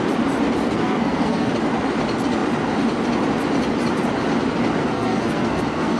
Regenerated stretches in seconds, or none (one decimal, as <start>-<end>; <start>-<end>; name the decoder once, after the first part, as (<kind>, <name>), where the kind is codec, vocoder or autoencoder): 0.6-1.5 (codec, SNAC); 4.8-6.0